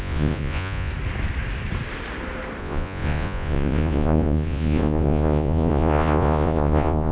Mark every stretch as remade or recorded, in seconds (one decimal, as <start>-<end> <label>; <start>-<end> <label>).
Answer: 0.0-0.9 remade; 0.9-2.6 recorded; 2.6-7.1 remade